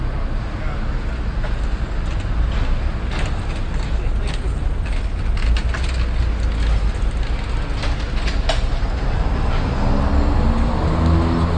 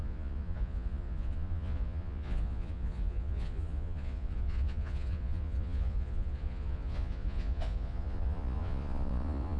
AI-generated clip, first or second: second